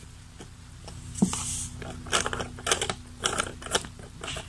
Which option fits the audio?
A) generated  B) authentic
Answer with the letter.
B